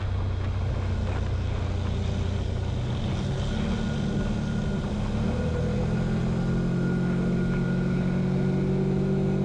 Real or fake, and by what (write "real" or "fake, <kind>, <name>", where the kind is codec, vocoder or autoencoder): real